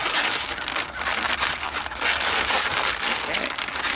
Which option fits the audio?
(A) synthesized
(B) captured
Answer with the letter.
B